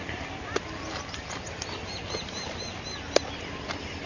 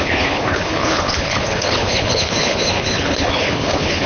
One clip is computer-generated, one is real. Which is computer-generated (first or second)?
second